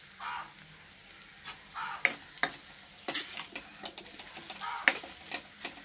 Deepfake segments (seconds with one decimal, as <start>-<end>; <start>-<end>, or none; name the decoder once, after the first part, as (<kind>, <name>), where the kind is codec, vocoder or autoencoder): none

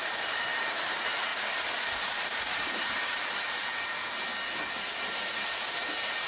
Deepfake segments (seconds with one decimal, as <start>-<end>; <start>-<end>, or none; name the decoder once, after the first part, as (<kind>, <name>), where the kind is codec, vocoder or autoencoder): 0.0-1.3 (vocoder, BigVGAN v2); 2.0-4.3; 4.8-6.3

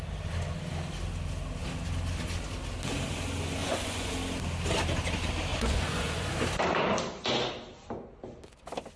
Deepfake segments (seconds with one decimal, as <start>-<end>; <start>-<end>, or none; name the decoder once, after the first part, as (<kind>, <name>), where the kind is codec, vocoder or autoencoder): 3.6-4.1 (vocoder, Vocos); 5.5-6.3

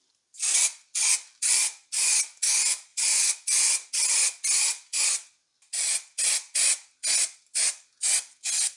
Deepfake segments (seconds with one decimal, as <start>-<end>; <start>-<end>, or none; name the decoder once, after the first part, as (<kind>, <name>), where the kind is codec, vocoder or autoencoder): 2.9-3.9 (vocoder, Vocos)

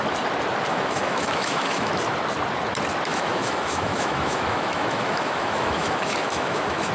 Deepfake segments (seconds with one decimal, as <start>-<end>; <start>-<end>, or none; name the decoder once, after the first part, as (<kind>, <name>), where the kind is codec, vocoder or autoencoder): 0.7-1.9 (autoencoder, DAC-VAE); 3.1-6.9